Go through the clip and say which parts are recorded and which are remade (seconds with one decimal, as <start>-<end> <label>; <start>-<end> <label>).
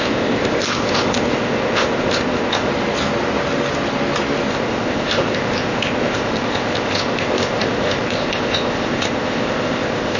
0.0-2.7 remade; 2.7-4.5 recorded; 4.5-10.2 remade